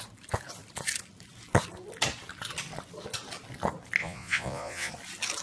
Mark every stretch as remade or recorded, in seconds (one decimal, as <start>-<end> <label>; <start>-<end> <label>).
0.0-4.0 recorded; 4.0-4.9 remade; 4.9-5.4 recorded